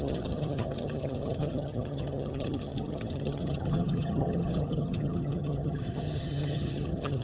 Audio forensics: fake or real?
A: fake